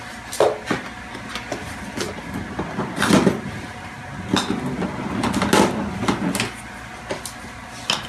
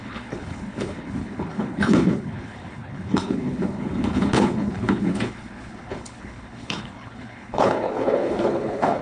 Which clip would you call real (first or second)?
first